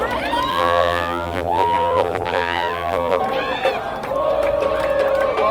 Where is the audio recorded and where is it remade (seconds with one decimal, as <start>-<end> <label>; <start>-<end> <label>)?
0.0-0.5 recorded; 0.5-3.2 remade; 3.2-5.5 recorded